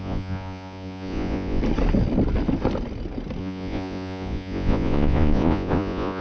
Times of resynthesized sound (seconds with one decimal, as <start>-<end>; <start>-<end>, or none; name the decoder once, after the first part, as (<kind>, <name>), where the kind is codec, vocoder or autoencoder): 0.0-1.6 (vocoder, Vocos); 3.4-6.2